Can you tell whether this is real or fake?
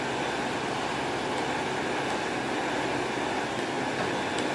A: real